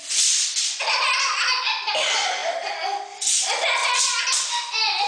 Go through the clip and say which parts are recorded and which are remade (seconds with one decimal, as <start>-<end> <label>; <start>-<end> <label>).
0.0-5.1 recorded